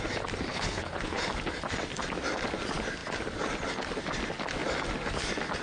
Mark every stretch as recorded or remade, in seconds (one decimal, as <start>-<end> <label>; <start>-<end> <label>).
0.0-0.5 recorded; 0.5-1.2 remade; 1.2-5.6 recorded